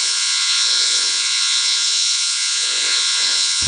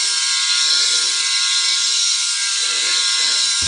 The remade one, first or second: first